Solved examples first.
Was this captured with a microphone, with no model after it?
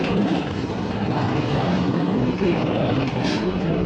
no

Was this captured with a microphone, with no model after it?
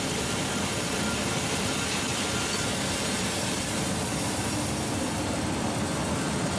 yes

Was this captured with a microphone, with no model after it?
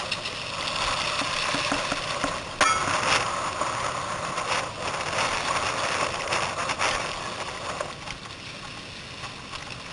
yes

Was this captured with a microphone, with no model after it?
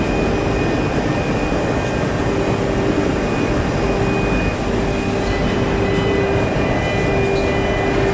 yes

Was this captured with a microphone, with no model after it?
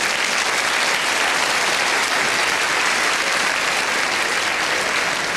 yes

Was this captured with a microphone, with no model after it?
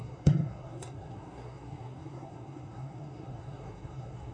no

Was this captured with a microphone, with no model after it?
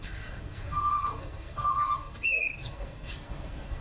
no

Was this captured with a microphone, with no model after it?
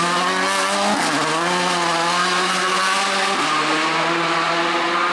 yes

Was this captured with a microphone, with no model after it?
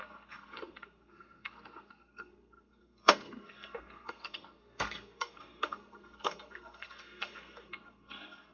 no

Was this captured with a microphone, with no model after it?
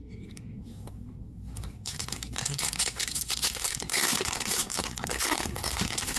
no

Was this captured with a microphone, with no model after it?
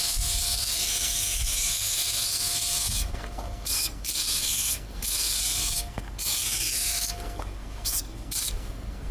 no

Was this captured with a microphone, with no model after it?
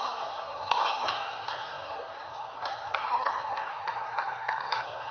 no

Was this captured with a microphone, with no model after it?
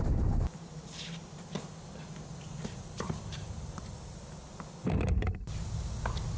yes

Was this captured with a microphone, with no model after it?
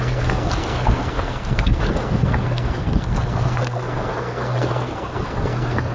no